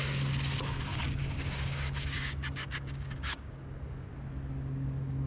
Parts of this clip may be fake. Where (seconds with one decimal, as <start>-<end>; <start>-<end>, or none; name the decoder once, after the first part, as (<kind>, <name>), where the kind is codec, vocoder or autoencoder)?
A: 0.9-4.1 (codec, DAC)